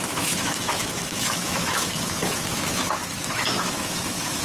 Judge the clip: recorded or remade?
remade